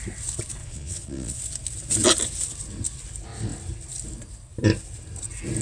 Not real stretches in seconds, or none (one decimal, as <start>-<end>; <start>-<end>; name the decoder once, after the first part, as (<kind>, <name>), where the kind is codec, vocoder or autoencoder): 0.6-1.4 (vocoder, Vocos)